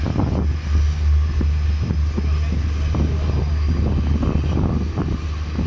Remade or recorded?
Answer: recorded